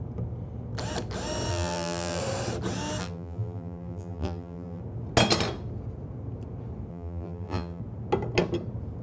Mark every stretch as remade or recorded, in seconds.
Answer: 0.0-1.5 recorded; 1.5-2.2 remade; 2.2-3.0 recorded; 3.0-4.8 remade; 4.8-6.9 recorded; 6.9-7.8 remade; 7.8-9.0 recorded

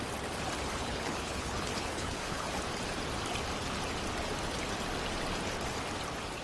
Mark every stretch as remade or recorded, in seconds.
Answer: 0.0-0.8 recorded; 0.8-2.6 remade; 2.6-6.4 recorded

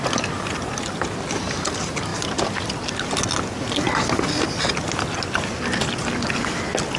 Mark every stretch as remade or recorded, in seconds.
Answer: 0.0-7.0 recorded

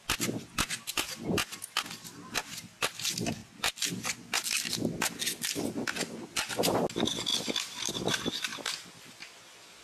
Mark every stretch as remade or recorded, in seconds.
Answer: 0.0-7.3 recorded; 7.3-7.9 remade; 7.9-8.5 recorded; 8.5-9.1 remade; 9.1-9.8 recorded

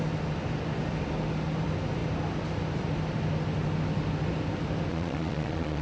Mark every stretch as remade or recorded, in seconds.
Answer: 0.0-4.9 recorded; 4.9-5.8 remade

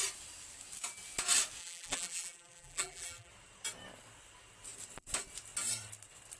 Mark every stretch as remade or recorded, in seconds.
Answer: 0.0-1.6 recorded; 1.6-3.3 remade; 3.3-6.4 recorded

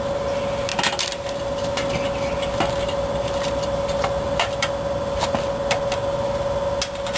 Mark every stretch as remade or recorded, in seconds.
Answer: 0.0-7.2 recorded